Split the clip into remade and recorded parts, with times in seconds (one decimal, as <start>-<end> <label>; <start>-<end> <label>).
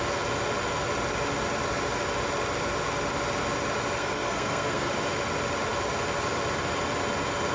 0.0-4.0 recorded; 4.0-4.9 remade; 4.9-7.5 recorded